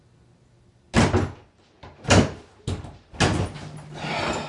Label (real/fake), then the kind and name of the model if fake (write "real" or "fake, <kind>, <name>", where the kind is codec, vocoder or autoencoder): real